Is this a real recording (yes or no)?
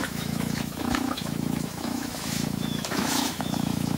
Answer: no